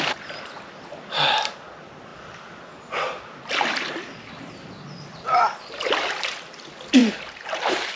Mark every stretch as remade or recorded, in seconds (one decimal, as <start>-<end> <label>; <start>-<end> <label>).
0.0-7.0 recorded; 7.0-8.0 remade